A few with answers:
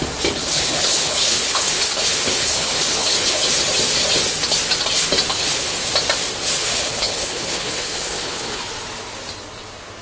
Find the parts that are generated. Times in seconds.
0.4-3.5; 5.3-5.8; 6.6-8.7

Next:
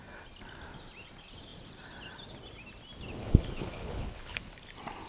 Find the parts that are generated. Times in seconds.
3.2-4.4

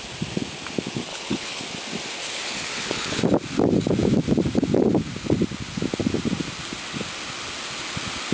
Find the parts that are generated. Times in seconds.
1.1-1.6; 2.2-3.2

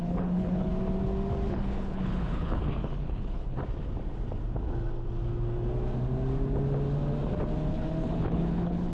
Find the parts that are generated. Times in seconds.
0.0-0.7; 1.5-3.6; 7.7-8.9

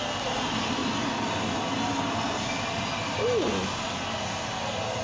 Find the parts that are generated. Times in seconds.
none

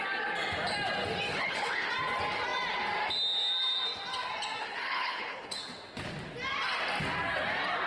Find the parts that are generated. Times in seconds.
1.3-1.9; 4.6-5.6

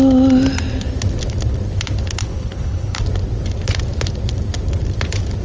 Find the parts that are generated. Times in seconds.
2.2-3.0